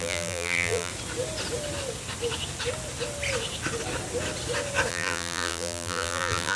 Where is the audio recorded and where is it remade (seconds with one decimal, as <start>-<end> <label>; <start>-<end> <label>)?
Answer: 0.0-0.9 remade; 0.9-4.9 recorded; 4.9-6.6 remade